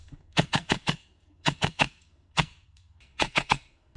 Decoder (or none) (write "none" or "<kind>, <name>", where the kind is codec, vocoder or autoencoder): codec, SNAC